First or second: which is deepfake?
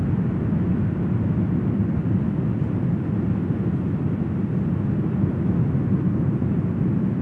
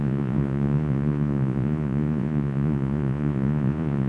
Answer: second